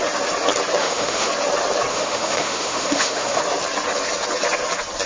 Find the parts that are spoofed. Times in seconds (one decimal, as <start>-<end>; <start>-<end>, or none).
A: 0.8-1.3; 1.9-3.4